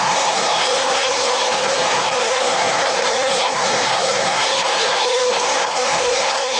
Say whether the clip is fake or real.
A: fake